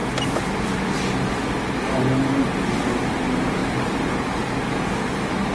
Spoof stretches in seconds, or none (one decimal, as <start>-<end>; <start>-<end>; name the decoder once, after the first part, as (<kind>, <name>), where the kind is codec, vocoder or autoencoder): none

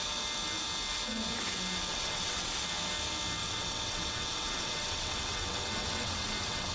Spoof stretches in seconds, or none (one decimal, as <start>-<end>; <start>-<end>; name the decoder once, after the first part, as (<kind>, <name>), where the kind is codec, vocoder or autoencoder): 1.9-2.6 (vocoder, WaveNeXt); 3.4-6.7

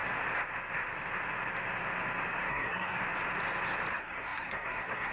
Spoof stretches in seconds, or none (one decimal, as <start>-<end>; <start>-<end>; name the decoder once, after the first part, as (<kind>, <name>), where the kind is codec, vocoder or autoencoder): 2.5-3.0 (codec, SNAC); 3.9-5.1

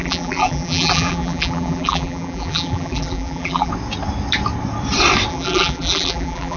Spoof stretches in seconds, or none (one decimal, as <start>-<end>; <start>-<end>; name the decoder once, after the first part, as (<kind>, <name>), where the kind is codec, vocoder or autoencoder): 0.0-3.7 (vocoder, BigVGAN v2); 5.3-6.6